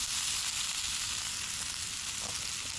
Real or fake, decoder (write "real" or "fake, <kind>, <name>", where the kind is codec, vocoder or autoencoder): real